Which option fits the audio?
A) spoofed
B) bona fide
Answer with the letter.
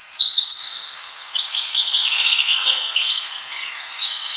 A